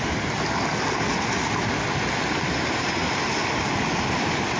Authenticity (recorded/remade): recorded